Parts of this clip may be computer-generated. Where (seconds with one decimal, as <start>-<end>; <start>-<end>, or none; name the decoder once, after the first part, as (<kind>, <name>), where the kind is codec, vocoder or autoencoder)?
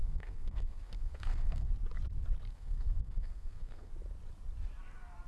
0.0-1.7 (codec, SNAC); 2.5-3.9